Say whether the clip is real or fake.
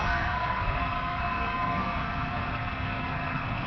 fake